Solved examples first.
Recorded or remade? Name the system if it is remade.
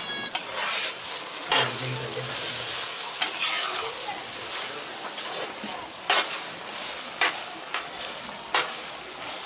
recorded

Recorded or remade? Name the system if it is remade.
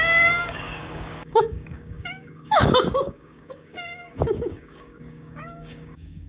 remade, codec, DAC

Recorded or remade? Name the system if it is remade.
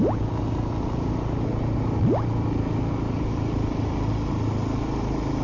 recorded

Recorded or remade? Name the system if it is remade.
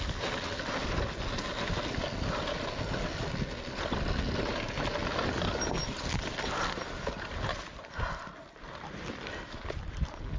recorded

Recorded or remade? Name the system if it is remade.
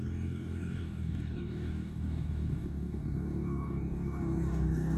remade, codec, DAC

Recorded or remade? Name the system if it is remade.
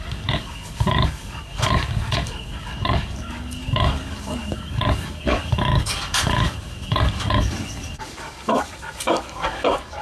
remade, codec, DAC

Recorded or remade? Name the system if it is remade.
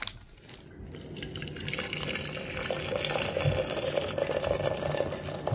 recorded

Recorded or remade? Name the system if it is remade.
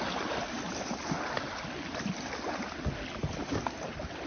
recorded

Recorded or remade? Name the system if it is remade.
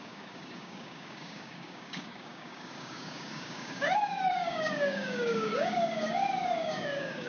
remade, codec, DAC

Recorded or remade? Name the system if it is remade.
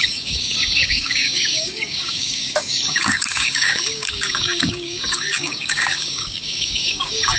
remade, codec, DAC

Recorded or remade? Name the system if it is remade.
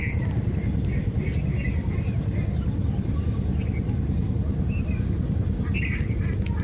recorded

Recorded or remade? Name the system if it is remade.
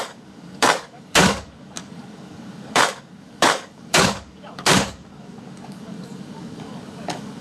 remade, codec, DAC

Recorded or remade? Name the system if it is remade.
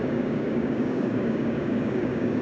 remade, codec, DAC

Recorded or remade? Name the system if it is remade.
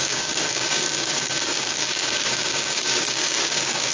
remade, codec, DAC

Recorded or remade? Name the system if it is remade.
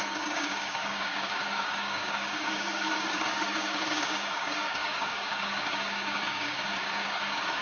remade, codec, DAC